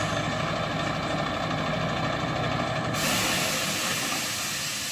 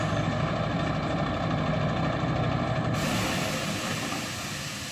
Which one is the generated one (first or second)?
second